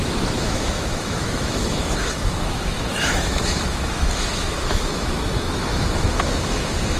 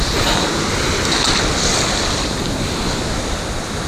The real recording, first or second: second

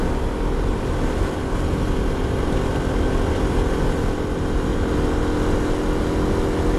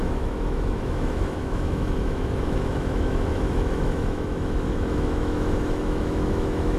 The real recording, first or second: first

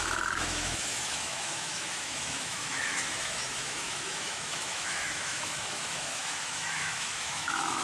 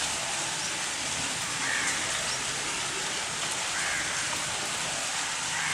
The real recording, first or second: second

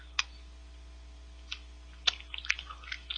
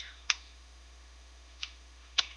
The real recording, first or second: first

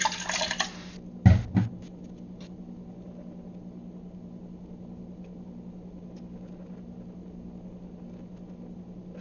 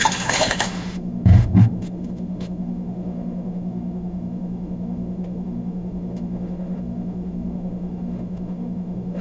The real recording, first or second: first